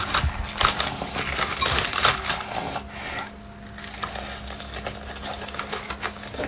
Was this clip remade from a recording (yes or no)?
no